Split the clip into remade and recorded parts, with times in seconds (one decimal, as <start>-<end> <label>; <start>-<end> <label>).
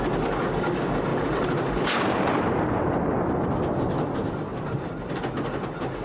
0.0-1.1 recorded; 1.1-2.7 remade; 2.7-4.5 recorded; 4.5-5.2 remade; 5.2-6.0 recorded